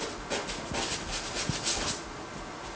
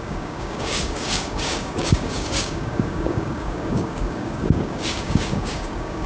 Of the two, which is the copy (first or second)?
second